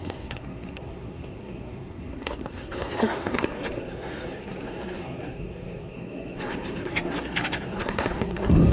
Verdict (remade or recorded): remade